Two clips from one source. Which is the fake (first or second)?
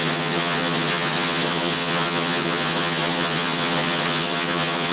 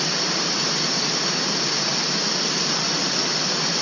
first